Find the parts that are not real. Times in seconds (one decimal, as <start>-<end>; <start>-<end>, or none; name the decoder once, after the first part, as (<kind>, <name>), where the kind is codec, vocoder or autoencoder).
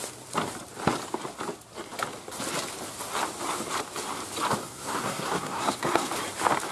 4.6-6.1 (codec, SNAC)